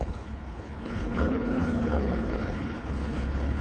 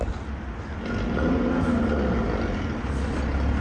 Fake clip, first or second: first